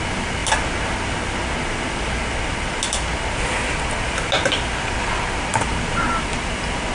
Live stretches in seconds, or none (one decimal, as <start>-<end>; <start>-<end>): 0.0-6.9

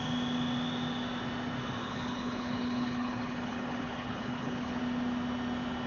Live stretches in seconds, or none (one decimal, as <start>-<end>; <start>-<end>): 0.0-1.8; 4.8-5.9

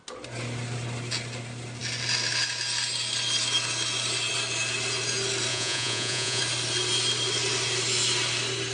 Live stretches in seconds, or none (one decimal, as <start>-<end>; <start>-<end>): 0.0-5.5; 6.4-8.7